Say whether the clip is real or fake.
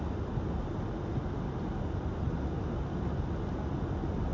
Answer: real